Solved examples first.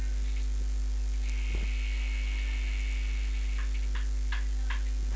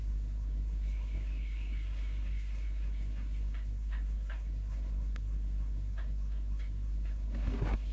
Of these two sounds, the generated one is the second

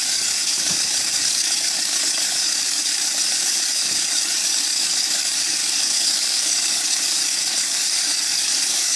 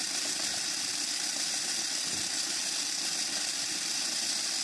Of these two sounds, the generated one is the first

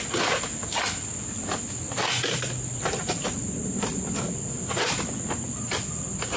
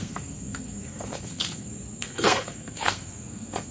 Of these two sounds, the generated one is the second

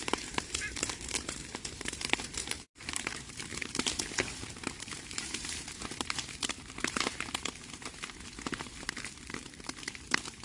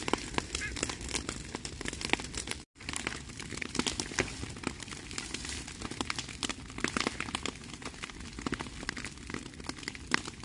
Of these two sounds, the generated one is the first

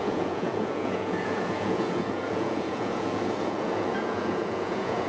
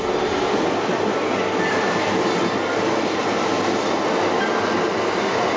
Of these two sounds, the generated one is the first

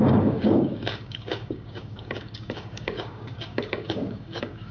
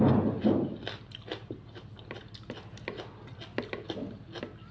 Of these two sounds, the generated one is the first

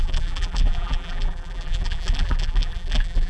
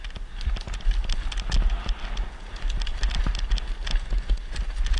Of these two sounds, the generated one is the first